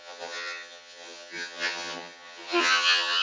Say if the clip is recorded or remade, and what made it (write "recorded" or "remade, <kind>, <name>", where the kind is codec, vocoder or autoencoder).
remade, vocoder, HiFi-GAN